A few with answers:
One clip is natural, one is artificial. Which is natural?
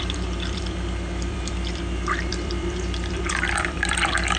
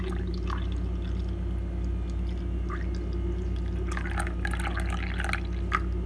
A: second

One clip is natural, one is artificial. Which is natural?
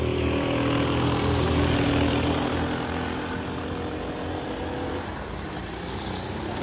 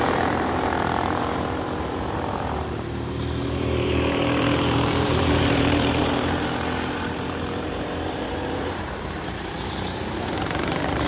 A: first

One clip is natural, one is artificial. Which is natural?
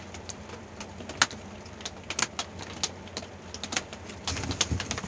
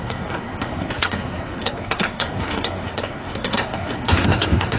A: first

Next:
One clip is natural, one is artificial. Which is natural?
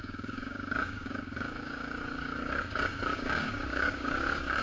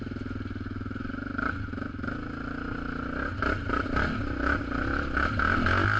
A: second